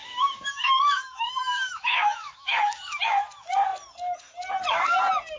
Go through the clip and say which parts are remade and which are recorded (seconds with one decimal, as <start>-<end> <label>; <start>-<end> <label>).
0.0-3.2 remade; 3.2-5.4 recorded